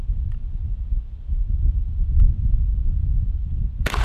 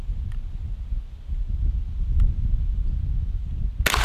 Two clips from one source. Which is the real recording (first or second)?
second